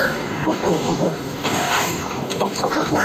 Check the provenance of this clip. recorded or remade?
remade